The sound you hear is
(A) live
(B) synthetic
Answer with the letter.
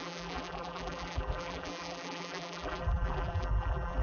B